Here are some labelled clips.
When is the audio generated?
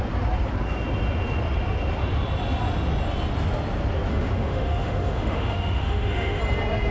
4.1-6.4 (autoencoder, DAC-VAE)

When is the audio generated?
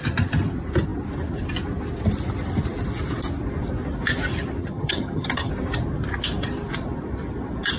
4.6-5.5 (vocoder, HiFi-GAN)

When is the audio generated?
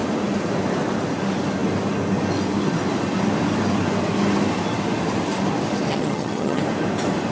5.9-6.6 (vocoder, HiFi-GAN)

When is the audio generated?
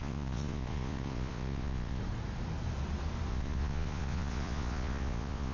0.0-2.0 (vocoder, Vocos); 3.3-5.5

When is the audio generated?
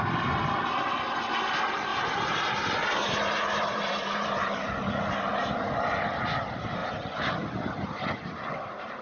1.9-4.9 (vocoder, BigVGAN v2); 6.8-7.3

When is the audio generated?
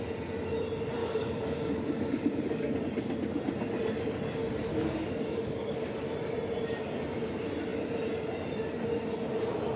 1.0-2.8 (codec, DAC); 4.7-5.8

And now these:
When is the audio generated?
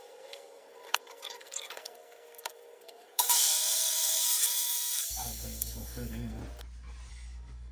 0.0-6.4 (codec, SNAC); 7.1-7.7